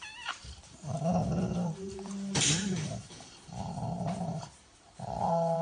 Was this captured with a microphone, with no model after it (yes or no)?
no